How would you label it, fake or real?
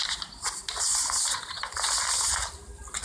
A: real